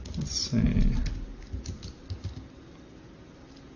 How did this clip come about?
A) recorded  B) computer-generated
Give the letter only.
A